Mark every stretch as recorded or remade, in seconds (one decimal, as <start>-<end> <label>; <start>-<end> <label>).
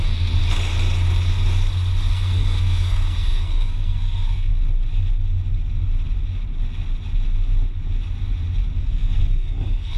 0.0-0.4 remade; 0.4-2.1 recorded; 2.1-4.5 remade; 4.5-8.8 recorded; 8.8-10.0 remade